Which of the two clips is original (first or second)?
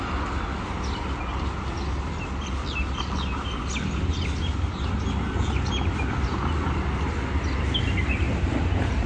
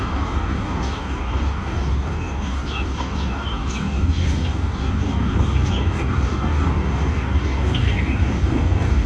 first